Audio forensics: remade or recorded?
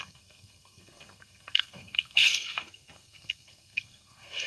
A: remade